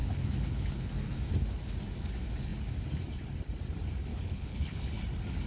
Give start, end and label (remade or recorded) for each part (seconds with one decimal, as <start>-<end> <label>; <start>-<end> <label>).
0.0-0.9 remade; 0.9-4.1 recorded; 4.1-4.8 remade; 4.8-5.5 recorded